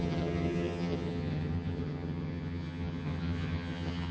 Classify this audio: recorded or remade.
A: remade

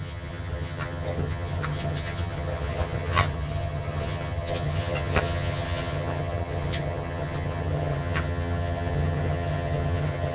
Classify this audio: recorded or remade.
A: remade